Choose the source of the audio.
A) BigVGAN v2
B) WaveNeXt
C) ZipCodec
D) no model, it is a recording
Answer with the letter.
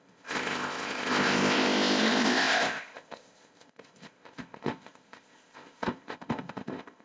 C